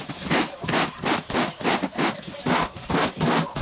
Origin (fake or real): real